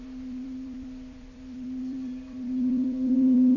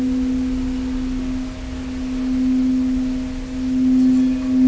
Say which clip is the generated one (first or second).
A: first